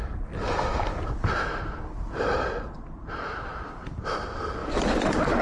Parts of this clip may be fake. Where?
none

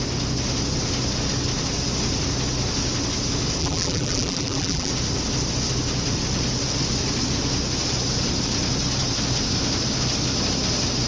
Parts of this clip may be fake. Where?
3.6-4.9 (vocoder, BigVGAN v2)

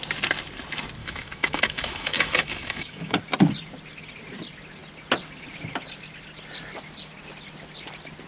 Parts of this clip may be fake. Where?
1.0-3.2 (autoencoder, DAC-VAE)

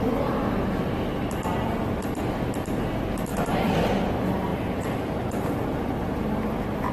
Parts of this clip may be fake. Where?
3.3-4.0 (vocoder, BigVGAN v2); 4.5-5.5

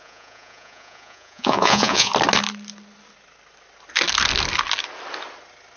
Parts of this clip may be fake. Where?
0.0-2.1 (vocoder, Vocos)

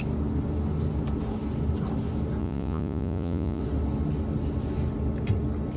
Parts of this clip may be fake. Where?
2.4-3.6 (vocoder, Vocos)